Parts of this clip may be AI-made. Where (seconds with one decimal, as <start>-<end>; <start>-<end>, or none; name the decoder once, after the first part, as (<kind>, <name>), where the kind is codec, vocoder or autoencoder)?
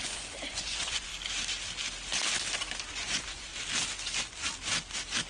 0.0-1.1 (vocoder, Vocos); 2.9-3.5